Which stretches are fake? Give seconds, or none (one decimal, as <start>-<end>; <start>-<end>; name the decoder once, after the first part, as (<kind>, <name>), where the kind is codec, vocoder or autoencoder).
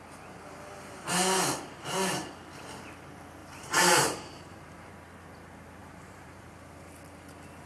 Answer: 3.4-4.9 (vocoder, BigVGAN v2); 5.8-6.5